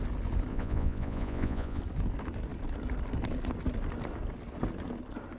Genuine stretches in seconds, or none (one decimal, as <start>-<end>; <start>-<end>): 0.0-0.5; 1.8-5.4

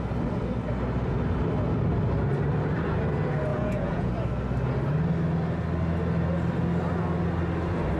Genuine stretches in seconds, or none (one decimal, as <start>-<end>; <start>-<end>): 0.0-3.5; 4.1-8.0